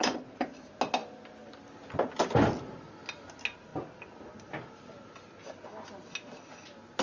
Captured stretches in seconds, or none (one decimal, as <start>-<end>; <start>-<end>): 0.0-7.0